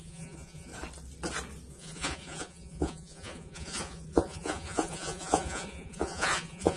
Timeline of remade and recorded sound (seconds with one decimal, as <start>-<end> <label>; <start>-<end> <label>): 0.0-0.7 remade; 0.7-1.7 recorded; 1.7-6.8 remade